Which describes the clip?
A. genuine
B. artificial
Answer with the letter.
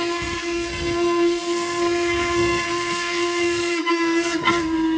B